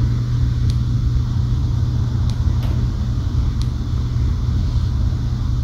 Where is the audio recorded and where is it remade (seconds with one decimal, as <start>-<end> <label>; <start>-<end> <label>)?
0.0-5.6 recorded